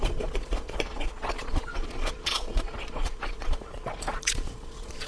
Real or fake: fake